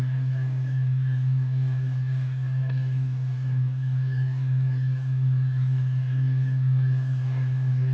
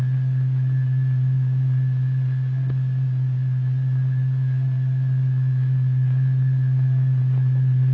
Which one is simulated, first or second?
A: first